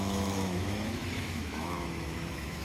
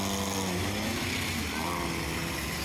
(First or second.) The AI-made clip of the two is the first